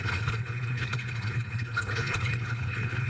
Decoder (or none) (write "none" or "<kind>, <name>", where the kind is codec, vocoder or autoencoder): codec, HILCodec